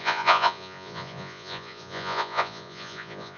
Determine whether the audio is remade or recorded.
remade